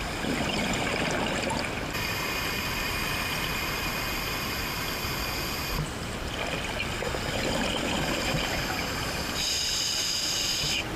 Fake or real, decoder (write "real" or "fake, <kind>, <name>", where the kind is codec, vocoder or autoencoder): real